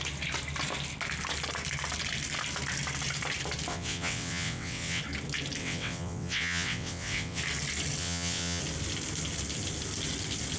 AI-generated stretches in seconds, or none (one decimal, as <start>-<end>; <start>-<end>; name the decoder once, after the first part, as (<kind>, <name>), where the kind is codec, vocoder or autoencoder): 3.7-5.0 (vocoder, WaveNeXt); 5.6-7.4; 8.0-8.6